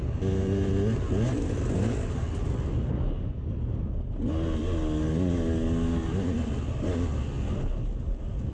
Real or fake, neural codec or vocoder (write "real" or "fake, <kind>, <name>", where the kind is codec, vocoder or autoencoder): real